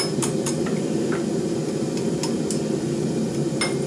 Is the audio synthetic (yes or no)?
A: no